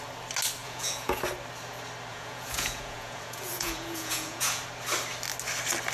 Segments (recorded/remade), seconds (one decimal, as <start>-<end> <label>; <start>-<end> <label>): 0.0-0.6 recorded; 0.6-1.2 remade; 1.2-2.1 recorded; 2.1-4.6 remade; 4.6-5.9 recorded